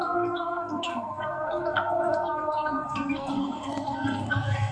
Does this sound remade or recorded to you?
remade